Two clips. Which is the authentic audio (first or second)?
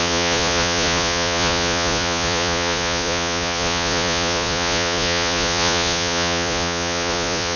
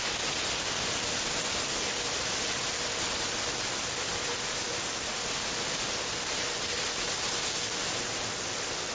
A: second